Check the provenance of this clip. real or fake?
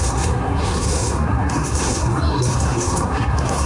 fake